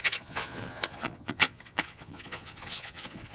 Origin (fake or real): fake